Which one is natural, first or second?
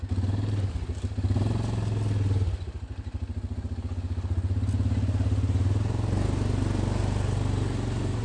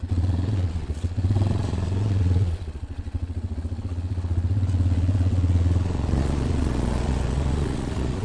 first